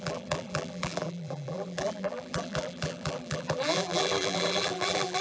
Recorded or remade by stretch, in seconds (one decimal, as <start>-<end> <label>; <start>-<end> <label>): 0.0-5.2 remade